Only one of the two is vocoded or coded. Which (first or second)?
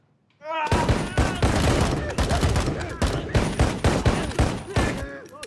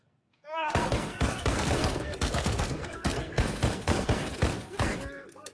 second